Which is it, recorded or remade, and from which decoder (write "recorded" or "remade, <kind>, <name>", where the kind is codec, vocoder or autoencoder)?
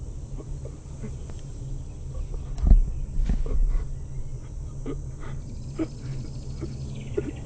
recorded